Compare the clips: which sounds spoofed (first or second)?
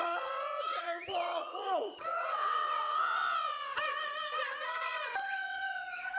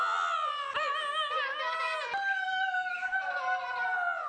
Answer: first